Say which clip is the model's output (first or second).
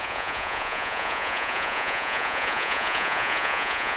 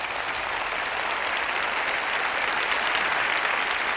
first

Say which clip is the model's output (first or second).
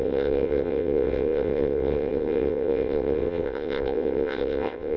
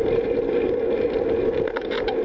first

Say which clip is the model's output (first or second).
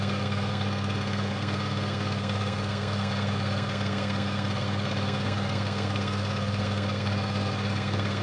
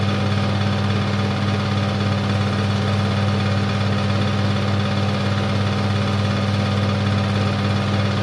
first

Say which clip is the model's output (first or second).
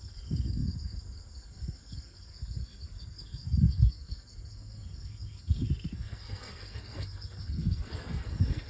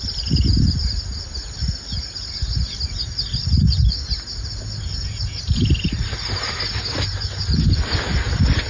first